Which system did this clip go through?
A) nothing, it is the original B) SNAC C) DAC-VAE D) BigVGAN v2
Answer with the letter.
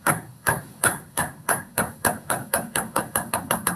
B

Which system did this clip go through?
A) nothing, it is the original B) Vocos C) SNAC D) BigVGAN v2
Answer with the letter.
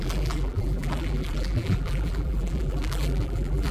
D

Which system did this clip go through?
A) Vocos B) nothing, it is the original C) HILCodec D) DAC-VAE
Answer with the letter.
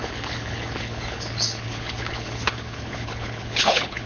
C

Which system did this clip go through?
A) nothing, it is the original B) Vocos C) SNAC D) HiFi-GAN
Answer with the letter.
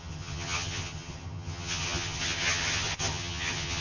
D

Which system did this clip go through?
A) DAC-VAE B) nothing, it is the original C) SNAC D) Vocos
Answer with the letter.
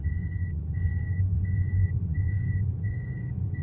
D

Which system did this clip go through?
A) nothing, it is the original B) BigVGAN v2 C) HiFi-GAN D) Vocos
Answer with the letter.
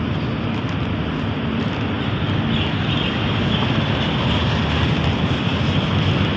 A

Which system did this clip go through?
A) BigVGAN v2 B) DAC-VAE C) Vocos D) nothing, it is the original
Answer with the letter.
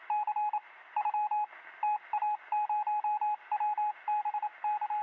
D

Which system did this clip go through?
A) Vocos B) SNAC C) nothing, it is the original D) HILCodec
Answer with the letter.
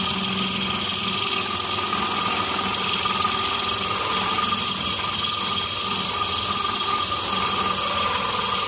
C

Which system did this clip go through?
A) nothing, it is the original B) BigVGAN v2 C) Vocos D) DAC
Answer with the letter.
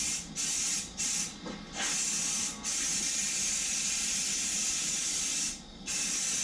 A